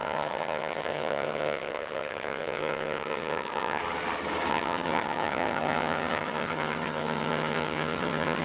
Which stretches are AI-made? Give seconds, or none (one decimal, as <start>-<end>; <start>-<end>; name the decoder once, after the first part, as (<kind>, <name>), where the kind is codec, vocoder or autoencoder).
0.0-3.8 (vocoder, HiFi-GAN); 4.5-8.4